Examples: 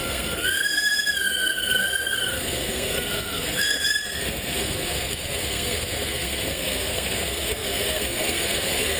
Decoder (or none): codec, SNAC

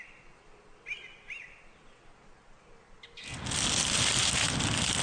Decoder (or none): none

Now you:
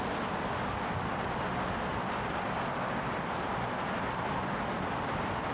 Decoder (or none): none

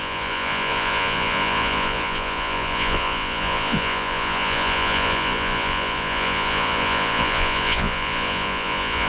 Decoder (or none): vocoder, Vocos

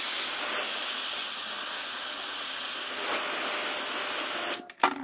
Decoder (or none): none